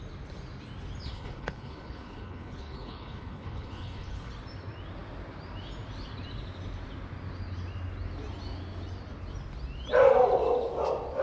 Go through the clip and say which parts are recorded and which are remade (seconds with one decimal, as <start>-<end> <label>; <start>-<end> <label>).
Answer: 0.0-1.1 recorded; 1.1-4.3 remade; 4.3-11.2 recorded